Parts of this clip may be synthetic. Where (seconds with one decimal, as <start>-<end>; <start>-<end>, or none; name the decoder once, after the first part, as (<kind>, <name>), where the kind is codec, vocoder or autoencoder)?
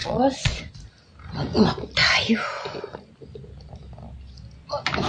0.0-0.6 (vocoder, Vocos)